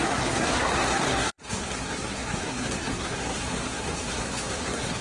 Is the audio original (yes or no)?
no